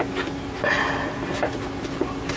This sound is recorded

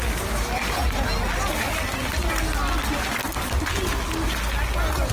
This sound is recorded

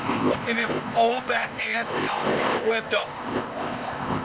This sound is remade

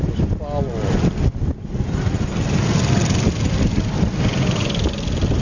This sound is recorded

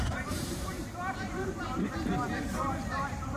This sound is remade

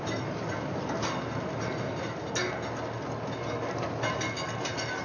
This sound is recorded